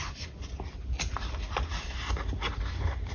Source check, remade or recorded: recorded